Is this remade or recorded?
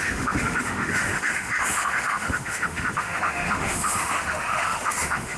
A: remade